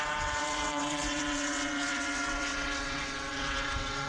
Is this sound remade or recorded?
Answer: remade